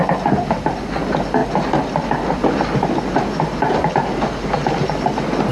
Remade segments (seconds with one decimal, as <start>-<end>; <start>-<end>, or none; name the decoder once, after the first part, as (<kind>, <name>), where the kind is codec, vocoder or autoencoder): none